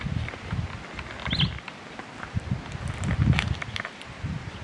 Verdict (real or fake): real